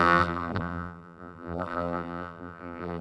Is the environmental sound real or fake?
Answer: fake